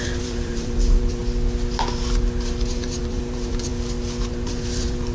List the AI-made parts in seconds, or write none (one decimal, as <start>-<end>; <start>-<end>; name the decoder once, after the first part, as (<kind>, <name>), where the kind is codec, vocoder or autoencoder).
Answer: 0.0-1.2 (vocoder, BigVGAN v2); 2.7-3.7; 4.3-5.1